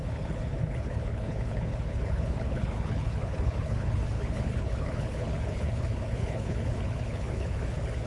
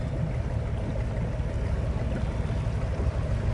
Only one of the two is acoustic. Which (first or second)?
second